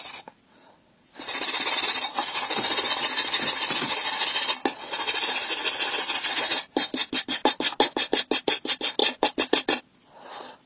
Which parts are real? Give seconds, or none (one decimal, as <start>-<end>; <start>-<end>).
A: 0.0-10.7